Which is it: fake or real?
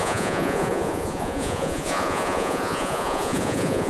fake